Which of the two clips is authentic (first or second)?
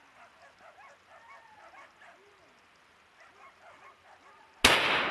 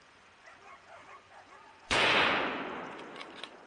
first